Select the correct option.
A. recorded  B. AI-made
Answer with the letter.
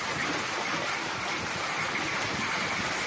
A